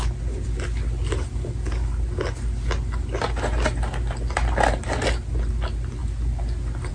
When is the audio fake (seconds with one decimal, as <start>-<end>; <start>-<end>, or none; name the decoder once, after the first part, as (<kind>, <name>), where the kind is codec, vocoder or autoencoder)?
none